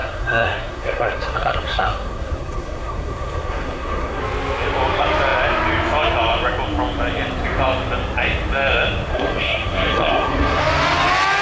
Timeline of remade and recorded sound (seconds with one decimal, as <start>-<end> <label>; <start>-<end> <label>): 0.0-4.2 remade; 4.2-9.1 recorded; 9.1-10.6 remade; 10.6-11.4 recorded